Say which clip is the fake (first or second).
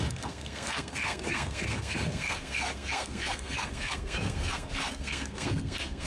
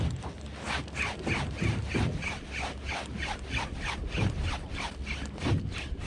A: first